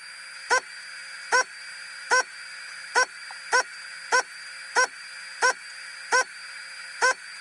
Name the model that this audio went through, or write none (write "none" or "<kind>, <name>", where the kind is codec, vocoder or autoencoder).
none